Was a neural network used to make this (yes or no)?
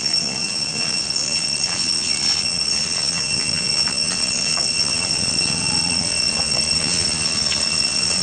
yes